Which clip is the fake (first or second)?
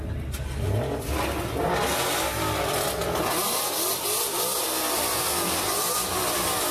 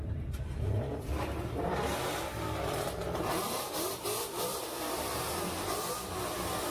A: second